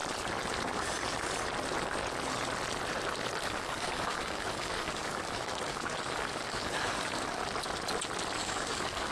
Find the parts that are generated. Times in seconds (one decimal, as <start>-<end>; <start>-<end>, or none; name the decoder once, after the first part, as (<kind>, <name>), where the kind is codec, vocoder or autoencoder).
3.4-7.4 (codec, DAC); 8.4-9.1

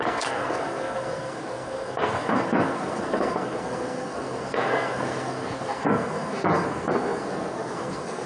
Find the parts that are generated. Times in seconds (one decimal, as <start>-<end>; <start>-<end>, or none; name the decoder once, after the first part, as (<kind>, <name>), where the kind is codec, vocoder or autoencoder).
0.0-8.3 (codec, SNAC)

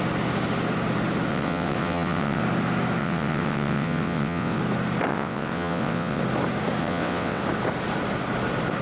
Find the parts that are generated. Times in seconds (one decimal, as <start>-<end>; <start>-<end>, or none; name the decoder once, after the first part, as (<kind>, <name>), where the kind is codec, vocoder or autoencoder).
1.3-2.4 (vocoder, WaveNeXt); 3.0-4.6; 5.1-6.2; 6.8-7.4

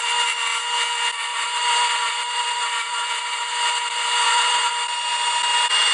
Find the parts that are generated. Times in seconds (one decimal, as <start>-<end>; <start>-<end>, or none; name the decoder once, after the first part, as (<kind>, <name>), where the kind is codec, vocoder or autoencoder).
1.3-4.7 (vocoder, BigVGAN v2)

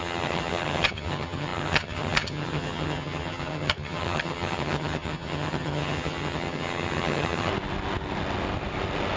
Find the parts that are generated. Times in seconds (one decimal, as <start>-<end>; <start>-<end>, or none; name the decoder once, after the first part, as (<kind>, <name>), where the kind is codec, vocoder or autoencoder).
0.0-7.5 (vocoder, HiFi-GAN)

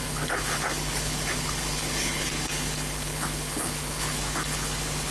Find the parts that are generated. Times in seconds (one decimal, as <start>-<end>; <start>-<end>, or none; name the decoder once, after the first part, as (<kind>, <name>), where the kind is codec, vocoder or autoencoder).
0.0-5.1 (codec, HILCodec)